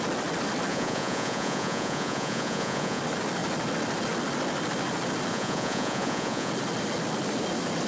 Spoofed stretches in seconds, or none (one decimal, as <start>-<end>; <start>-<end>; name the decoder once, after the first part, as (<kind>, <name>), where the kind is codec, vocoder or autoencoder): 0.7-3.0 (vocoder, Vocos); 5.3-6.5